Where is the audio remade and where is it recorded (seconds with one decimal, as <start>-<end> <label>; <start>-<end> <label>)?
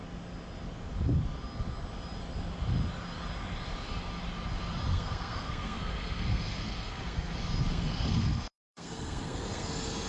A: 0.0-4.9 recorded; 4.9-7.3 remade; 7.3-7.7 recorded; 7.7-9.7 remade; 9.7-10.1 recorded